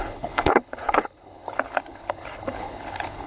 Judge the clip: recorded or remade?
remade